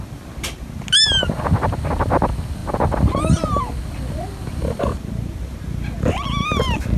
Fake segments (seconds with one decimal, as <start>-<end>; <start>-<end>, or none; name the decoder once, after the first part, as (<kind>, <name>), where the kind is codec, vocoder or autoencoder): none